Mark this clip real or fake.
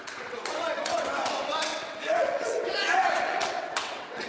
fake